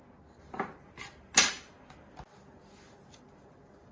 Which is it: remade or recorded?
recorded